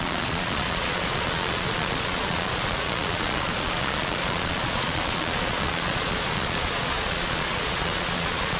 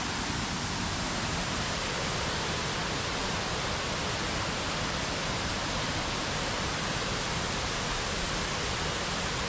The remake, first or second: first